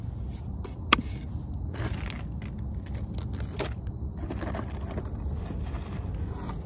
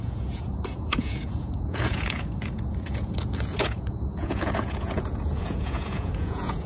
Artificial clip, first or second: second